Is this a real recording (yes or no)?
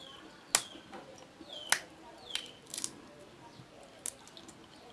yes